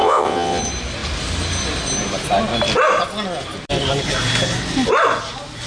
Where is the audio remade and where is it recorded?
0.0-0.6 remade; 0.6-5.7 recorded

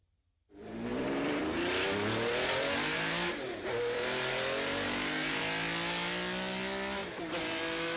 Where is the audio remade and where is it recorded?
0.0-0.9 recorded; 0.9-5.4 remade; 5.4-7.0 recorded; 7.0-8.0 remade

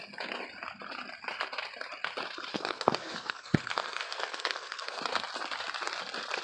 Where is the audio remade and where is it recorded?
0.0-2.5 recorded; 2.5-5.0 remade; 5.0-6.4 recorded

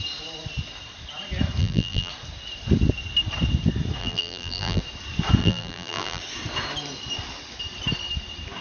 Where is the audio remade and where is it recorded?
0.0-1.6 recorded; 1.6-2.1 remade; 2.1-4.0 recorded; 4.0-4.8 remade; 4.8-5.4 recorded; 5.4-6.2 remade; 6.2-8.6 recorded

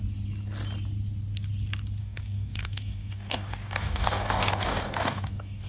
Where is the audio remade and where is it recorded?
0.0-2.0 recorded; 2.0-5.7 remade

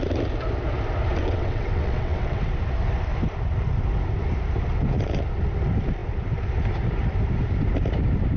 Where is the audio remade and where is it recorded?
0.0-1.2 recorded; 1.2-2.5 remade; 2.5-8.4 recorded